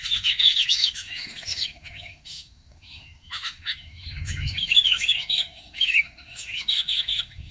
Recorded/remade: remade